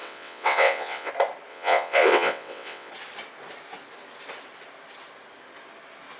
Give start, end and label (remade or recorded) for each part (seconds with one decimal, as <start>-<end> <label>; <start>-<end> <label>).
0.0-1.1 remade; 1.1-1.5 recorded; 1.5-2.9 remade; 2.9-6.2 recorded